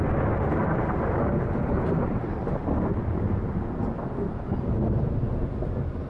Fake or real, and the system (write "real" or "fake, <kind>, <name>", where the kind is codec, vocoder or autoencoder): real